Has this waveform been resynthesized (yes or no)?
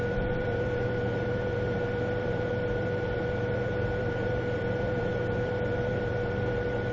yes